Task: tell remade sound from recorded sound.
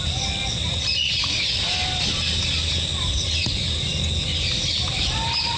recorded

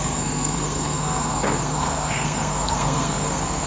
remade